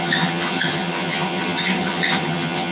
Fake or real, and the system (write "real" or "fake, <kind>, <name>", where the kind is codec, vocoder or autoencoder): fake, vocoder, HiFi-GAN